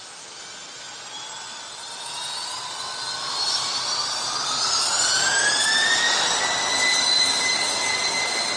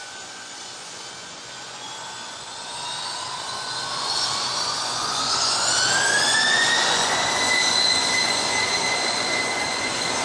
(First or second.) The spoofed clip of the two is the second